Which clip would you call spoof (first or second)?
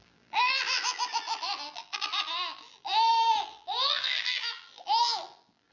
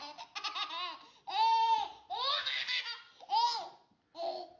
first